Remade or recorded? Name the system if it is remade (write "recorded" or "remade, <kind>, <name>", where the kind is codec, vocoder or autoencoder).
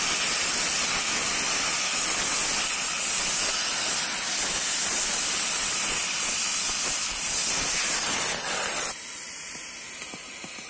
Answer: recorded